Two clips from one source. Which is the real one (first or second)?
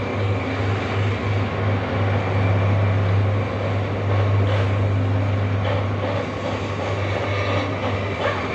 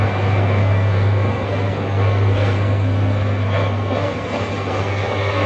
first